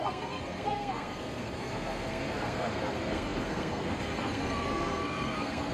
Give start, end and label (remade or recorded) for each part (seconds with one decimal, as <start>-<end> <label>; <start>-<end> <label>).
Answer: 0.0-5.7 remade